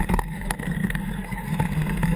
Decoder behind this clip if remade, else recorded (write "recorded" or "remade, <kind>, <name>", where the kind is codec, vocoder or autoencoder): remade, codec, SNAC